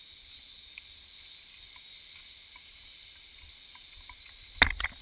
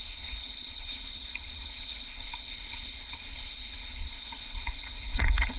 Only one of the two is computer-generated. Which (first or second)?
second